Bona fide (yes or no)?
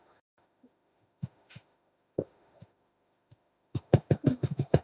no